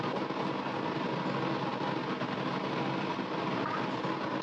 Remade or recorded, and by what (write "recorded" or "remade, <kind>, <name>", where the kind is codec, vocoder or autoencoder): recorded